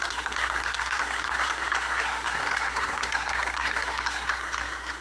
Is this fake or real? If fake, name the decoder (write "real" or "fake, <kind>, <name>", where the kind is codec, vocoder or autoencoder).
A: fake, codec, SNAC